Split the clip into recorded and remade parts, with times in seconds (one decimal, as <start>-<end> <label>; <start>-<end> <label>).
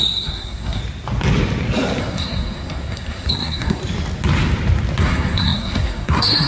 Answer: 0.0-0.8 remade; 0.8-2.0 recorded; 2.0-3.8 remade; 3.8-5.0 recorded; 5.0-6.5 remade